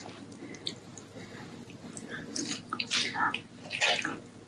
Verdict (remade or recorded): recorded